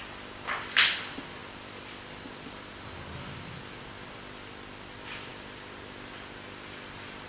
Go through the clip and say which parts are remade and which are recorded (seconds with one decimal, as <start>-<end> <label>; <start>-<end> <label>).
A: 0.0-7.3 recorded